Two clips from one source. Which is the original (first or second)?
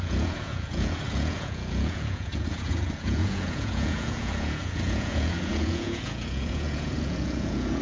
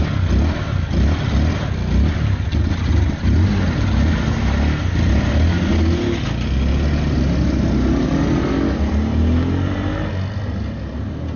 second